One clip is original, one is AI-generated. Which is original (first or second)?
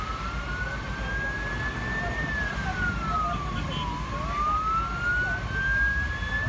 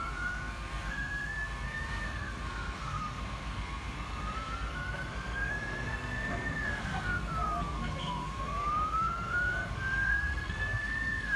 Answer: first